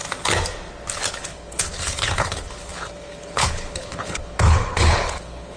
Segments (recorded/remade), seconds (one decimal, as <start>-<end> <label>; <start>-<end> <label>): 0.0-1.1 recorded; 1.1-5.6 remade